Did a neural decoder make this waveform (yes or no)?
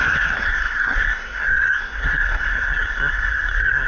yes